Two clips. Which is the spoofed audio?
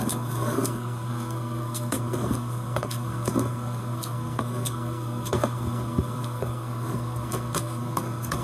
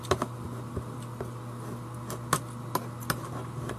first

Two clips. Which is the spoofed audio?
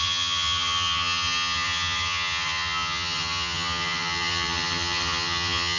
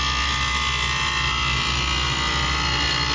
first